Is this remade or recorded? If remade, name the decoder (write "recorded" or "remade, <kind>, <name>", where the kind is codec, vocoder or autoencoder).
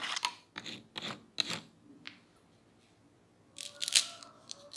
recorded